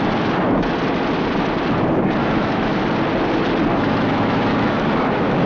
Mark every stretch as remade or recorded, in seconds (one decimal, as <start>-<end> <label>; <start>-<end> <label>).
0.0-2.2 recorded; 2.2-2.8 remade; 2.8-3.7 recorded; 3.7-5.5 remade